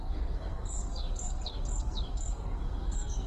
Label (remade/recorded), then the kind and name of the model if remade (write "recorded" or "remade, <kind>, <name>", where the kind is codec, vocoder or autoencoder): remade, codec, SNAC